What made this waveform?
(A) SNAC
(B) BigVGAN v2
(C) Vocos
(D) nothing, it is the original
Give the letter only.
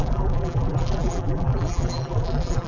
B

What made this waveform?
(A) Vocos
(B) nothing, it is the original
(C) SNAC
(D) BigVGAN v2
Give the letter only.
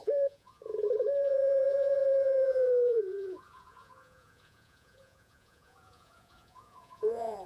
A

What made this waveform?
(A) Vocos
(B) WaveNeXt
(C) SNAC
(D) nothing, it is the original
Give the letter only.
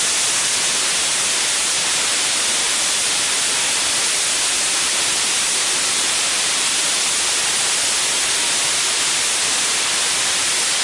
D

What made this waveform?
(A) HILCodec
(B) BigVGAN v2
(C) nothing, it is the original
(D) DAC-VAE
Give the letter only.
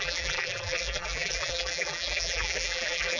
B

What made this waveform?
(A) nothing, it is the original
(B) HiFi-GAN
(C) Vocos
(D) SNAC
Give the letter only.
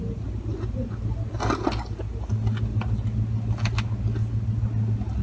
A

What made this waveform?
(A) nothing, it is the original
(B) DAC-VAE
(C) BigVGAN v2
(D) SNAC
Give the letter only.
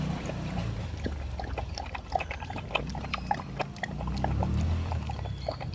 A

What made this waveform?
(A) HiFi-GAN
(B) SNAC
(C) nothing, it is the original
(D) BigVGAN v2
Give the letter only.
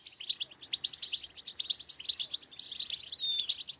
C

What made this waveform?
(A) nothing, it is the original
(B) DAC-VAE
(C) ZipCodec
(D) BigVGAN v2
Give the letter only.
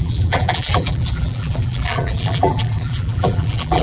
D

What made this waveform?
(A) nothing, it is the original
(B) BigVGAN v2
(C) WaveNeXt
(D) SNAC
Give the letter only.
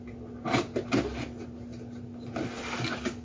A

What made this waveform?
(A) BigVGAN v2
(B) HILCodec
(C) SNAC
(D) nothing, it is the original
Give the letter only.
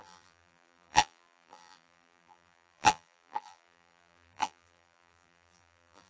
A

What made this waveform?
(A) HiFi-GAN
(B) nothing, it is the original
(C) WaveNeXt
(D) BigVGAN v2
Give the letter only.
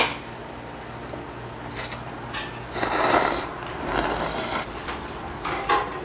B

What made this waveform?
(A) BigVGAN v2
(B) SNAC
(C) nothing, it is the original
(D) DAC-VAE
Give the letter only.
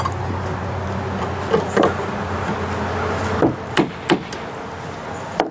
C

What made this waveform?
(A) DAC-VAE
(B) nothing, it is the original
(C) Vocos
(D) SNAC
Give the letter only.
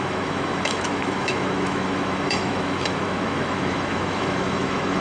A